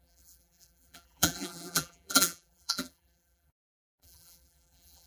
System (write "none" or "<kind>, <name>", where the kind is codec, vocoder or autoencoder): vocoder, BigVGAN v2